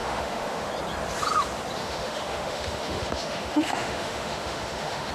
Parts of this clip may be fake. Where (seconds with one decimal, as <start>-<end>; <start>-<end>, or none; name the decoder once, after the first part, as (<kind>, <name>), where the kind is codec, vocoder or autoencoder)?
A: 0.0-0.7 (autoencoder, DAC-VAE); 1.8-5.1